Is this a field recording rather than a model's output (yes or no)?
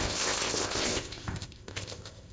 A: no